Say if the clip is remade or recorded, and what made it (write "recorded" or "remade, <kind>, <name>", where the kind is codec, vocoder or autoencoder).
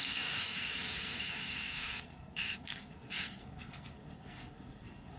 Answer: remade, codec, SNAC